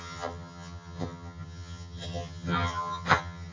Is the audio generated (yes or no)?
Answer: yes